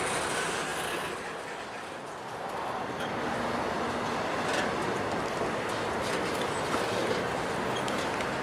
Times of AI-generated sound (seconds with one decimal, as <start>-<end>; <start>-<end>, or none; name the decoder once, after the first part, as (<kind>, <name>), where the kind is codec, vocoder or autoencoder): none